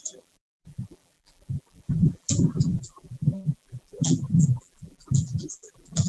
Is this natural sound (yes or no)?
no